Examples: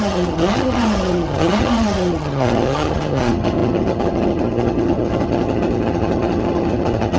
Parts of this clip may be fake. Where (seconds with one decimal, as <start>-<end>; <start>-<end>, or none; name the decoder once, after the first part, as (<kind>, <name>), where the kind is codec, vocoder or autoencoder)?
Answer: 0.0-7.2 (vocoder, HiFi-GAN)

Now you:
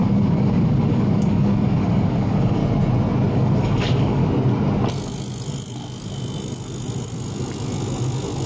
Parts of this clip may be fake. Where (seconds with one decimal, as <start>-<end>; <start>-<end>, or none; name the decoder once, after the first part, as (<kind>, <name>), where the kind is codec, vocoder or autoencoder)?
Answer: 0.0-2.6 (codec, DAC); 3.3-4.2

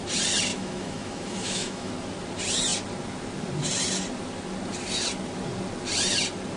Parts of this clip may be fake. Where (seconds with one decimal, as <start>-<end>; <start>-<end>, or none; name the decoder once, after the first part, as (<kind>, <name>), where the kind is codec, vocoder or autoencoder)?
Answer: 0.5-1.9 (autoencoder, DAC-VAE)